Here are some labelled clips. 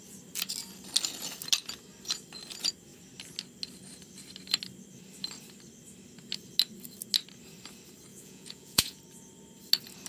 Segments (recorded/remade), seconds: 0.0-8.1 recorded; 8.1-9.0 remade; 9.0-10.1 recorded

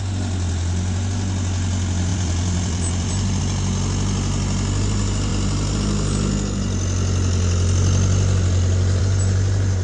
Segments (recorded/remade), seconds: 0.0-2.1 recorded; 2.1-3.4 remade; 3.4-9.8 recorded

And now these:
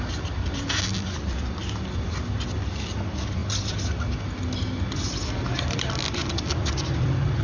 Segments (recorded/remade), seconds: 0.0-7.4 recorded